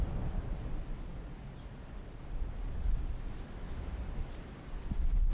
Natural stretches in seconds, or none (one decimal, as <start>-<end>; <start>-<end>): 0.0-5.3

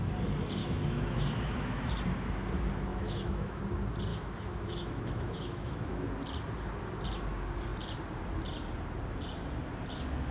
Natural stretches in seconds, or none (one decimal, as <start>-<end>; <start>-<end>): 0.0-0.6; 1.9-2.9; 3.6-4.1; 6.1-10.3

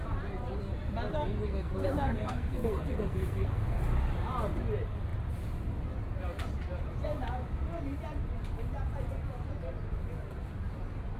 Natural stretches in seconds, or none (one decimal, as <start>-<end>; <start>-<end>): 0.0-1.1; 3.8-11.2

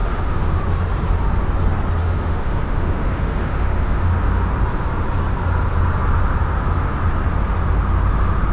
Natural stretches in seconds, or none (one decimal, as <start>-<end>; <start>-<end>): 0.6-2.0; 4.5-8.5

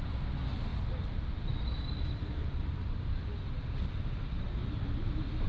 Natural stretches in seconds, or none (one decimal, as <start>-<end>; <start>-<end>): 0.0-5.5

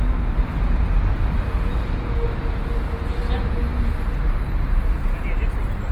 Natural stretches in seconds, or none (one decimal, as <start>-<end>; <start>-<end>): 0.0-5.9

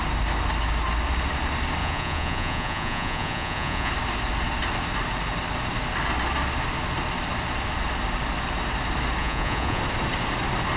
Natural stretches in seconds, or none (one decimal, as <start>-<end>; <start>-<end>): 0.0-1.8; 3.9-9.2; 9.8-10.8